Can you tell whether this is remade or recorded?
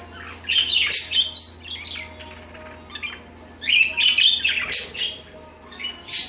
recorded